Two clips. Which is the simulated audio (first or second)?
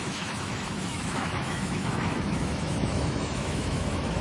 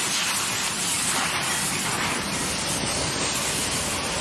first